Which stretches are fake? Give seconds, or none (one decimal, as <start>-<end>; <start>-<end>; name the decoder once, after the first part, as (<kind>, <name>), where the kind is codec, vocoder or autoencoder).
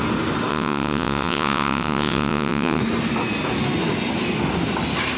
0.5-2.8 (vocoder, WaveNeXt)